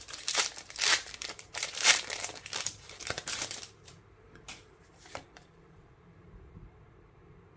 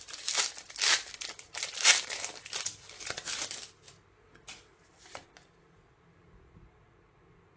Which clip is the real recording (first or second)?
second